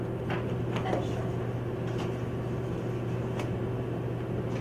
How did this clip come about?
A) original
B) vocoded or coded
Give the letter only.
A